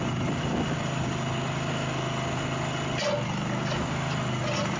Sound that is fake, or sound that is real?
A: real